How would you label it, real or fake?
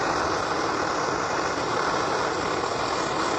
real